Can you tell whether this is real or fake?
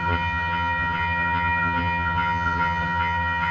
fake